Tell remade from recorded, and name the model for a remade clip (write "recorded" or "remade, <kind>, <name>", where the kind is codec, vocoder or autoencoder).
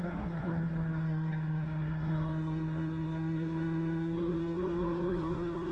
remade, codec, SNAC